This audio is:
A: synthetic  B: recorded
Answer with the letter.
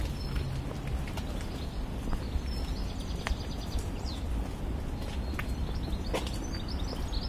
B